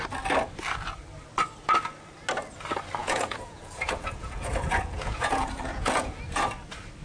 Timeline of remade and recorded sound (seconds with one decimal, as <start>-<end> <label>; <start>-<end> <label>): 0.0-3.0 recorded; 3.0-6.2 remade; 6.2-7.0 recorded